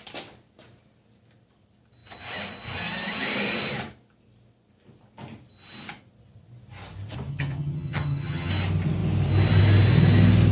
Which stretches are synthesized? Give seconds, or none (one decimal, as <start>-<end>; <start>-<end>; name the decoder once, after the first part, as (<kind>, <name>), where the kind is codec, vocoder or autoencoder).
7.3-8.5 (vocoder, HiFi-GAN)